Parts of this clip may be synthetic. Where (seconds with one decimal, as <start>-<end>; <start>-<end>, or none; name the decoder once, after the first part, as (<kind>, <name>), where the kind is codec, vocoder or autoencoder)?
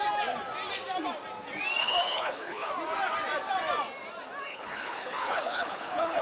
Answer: 1.8-2.7 (codec, HILCodec); 4.5-6.2